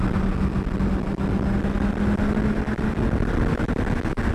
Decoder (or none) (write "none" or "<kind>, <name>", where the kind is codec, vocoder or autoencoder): none